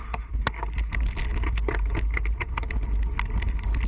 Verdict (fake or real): real